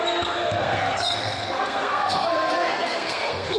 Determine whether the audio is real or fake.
fake